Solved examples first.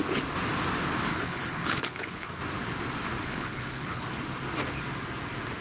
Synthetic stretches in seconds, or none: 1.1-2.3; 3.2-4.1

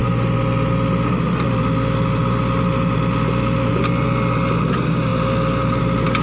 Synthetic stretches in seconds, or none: none

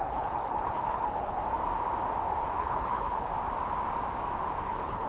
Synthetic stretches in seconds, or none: 0.0-1.4; 2.6-3.3; 4.6-5.1

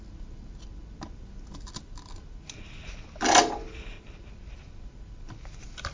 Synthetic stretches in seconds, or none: none